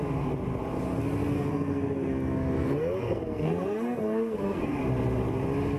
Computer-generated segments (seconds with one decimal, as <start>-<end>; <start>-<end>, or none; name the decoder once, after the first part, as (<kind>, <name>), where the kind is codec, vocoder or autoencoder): 1.3-4.8 (codec, SNAC)